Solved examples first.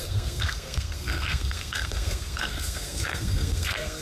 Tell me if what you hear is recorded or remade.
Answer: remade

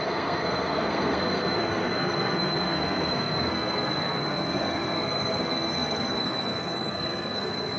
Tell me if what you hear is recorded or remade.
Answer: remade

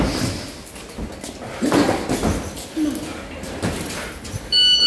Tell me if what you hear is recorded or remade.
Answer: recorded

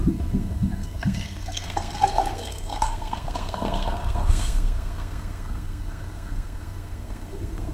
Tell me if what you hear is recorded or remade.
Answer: remade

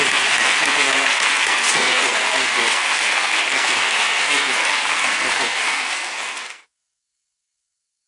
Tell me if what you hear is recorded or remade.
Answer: remade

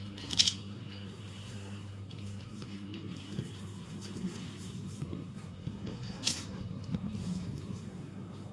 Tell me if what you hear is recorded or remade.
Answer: remade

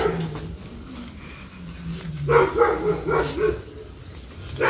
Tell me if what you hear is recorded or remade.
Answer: recorded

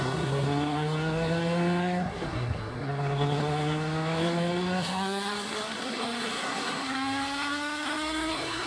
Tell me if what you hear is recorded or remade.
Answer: remade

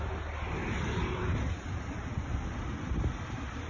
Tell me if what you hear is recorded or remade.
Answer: recorded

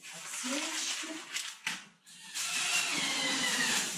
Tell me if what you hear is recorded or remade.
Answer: recorded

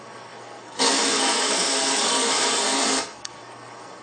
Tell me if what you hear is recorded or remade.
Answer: remade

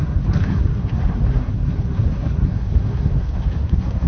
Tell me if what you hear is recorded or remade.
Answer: remade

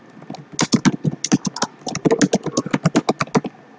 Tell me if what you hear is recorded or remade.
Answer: recorded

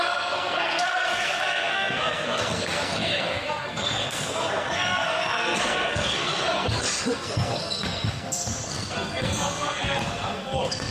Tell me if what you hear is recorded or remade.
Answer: remade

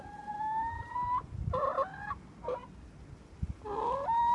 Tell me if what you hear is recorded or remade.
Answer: recorded